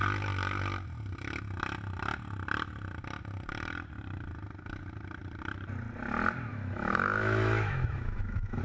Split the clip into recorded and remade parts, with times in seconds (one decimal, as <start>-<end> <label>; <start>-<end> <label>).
0.0-6.5 recorded; 6.5-8.6 remade